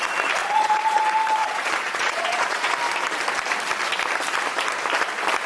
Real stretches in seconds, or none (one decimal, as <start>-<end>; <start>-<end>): 0.0-0.4; 1.0-1.4; 2.7-5.5